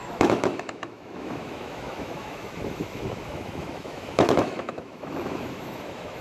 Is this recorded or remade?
remade